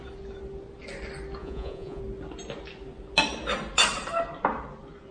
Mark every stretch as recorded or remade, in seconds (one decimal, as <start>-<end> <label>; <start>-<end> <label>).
0.0-1.4 recorded; 1.4-2.0 remade; 2.0-5.1 recorded